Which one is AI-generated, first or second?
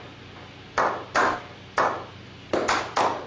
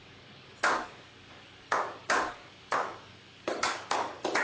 second